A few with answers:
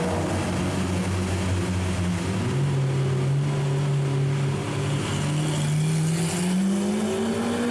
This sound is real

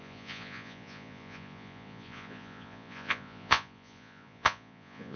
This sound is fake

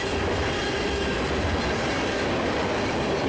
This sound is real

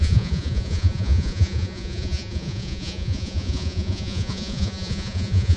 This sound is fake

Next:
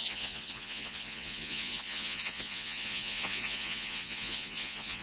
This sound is fake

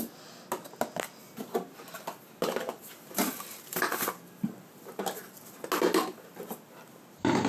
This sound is real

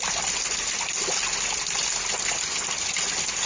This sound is real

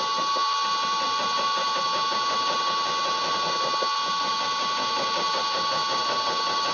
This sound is real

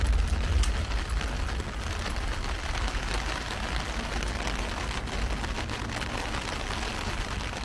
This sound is real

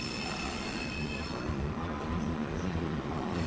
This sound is fake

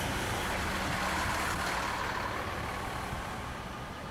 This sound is real